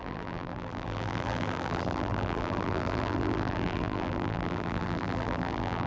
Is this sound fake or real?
fake